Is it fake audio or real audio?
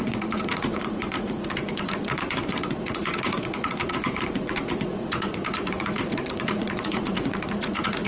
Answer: fake